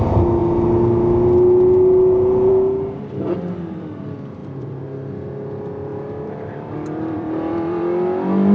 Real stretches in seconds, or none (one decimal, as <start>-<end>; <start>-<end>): 0.0-4.4; 5.1-5.9; 7.8-8.5